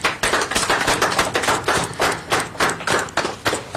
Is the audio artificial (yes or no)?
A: no